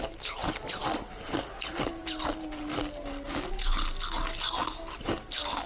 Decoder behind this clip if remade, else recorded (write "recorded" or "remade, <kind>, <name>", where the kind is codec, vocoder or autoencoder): recorded